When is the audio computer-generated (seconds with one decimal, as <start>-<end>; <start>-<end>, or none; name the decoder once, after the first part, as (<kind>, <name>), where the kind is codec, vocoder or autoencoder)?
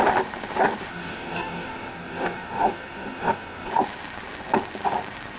0.9-3.7 (codec, DAC)